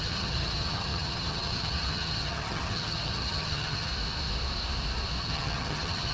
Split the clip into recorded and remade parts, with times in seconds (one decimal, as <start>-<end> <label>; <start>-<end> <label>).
0.0-3.9 remade; 3.9-5.2 recorded; 5.2-6.1 remade